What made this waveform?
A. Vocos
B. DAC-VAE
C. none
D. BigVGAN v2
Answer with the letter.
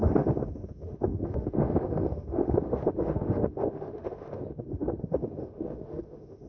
B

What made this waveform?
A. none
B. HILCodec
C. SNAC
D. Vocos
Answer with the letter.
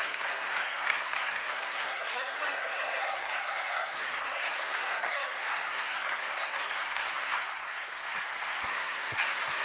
C